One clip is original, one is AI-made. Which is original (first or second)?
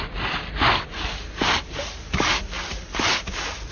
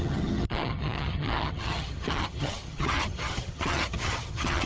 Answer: first